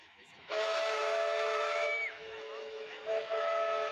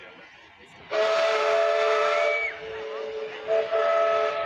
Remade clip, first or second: first